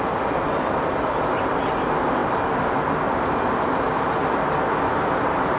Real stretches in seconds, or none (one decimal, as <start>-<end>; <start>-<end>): 0.0-5.6